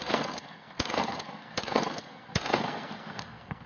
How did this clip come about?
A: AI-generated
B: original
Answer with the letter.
A